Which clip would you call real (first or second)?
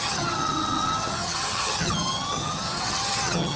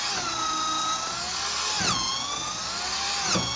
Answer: second